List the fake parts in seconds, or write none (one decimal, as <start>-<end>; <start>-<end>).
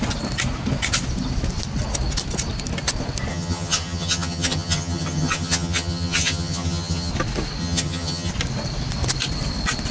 3.3-7.1; 7.6-8.3